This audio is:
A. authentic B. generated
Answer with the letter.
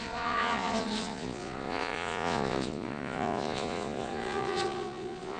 B